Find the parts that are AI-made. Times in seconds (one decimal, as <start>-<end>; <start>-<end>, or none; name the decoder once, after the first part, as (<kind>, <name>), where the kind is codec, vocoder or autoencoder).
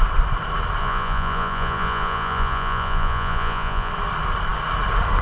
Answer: 0.8-3.9 (vocoder, Vocos)